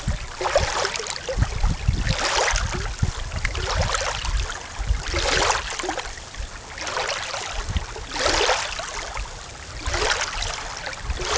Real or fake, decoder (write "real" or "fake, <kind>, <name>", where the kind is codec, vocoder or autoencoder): real